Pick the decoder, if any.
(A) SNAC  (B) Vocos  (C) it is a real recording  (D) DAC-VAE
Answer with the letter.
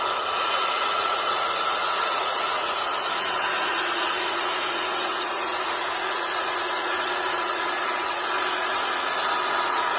B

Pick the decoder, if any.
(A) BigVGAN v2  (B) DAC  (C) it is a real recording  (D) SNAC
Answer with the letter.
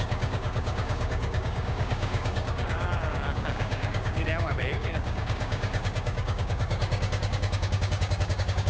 B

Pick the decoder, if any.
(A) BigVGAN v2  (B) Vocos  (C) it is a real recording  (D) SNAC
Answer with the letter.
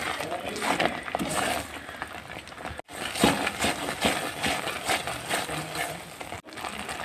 C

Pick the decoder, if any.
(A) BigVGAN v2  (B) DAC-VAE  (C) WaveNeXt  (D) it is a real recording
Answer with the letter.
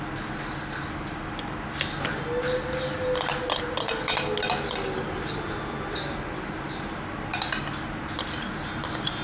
D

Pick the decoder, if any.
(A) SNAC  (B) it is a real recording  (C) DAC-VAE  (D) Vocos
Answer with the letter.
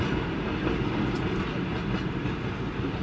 B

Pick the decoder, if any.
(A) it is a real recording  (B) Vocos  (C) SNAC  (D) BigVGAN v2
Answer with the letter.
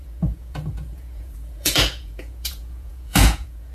B